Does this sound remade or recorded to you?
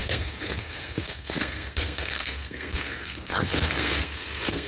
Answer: remade